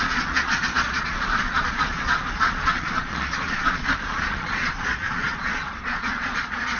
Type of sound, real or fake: fake